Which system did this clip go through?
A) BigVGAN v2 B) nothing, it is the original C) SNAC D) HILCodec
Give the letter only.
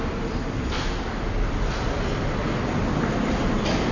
B